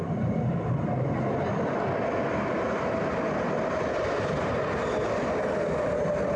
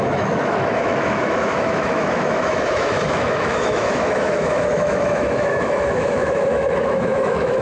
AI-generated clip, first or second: second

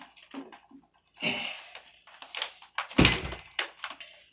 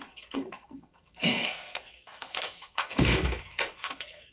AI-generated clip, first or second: second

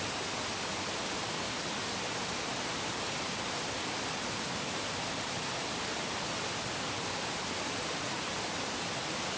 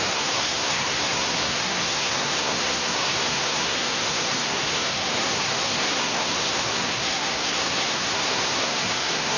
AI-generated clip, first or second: second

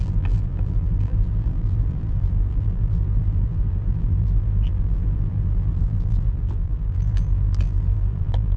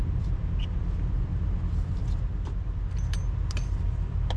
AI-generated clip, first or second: first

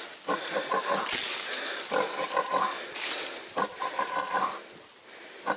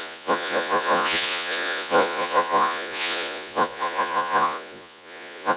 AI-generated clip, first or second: second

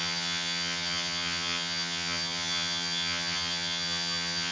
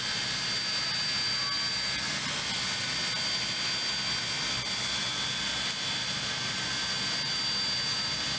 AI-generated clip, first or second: first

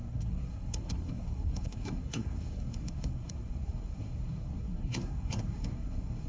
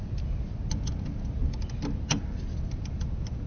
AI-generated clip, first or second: first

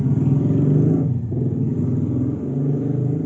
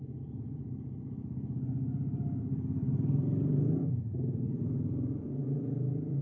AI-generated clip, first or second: second